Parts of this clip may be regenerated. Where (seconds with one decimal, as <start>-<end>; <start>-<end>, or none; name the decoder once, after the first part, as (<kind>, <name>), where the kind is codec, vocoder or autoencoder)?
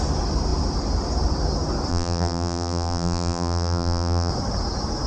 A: 1.9-4.3 (vocoder, BigVGAN v2)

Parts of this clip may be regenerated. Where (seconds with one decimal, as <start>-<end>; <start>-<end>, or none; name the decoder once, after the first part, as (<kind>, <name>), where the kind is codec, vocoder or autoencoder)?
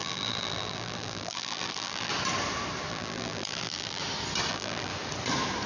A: 0.0-2.1 (vocoder, BigVGAN v2); 2.9-4.0; 4.5-4.9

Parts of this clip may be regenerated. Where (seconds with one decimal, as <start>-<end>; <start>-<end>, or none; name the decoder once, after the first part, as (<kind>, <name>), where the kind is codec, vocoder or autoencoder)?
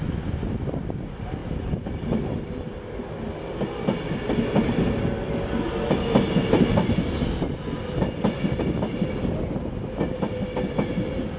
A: none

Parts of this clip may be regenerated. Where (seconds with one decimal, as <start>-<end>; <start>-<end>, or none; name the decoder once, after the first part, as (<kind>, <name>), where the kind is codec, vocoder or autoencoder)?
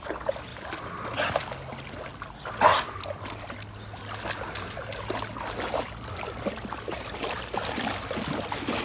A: 0.5-1.5 (vocoder, BigVGAN v2)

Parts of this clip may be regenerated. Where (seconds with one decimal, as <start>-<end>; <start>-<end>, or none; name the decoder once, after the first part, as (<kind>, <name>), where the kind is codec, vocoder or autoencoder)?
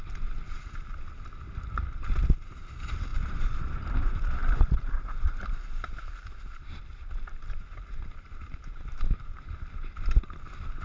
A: 3.1-6.8 (vocoder, BigVGAN v2)